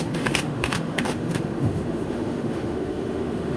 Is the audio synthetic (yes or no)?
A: yes